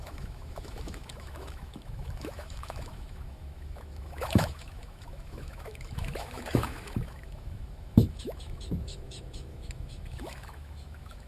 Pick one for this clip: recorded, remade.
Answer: remade